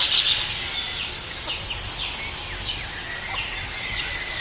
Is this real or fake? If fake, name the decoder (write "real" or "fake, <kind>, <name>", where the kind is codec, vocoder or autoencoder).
real